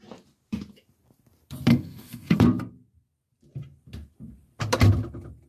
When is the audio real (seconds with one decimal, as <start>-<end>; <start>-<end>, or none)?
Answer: 0.0-1.7; 2.4-5.5